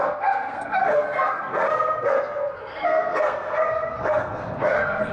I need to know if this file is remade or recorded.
remade